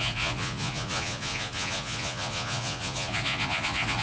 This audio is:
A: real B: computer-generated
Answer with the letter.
B